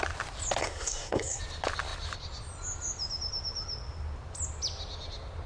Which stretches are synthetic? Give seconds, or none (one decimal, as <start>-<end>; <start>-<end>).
0.6-1.4